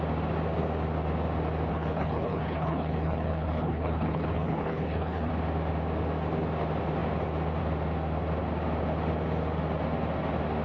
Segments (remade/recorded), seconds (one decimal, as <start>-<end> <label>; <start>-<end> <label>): 0.0-1.7 recorded; 1.7-5.3 remade; 5.3-10.6 recorded